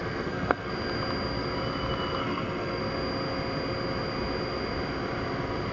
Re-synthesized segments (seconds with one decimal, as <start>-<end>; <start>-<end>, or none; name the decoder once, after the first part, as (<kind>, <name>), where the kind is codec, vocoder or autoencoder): 0.0-0.7 (codec, SNAC); 2.2-2.8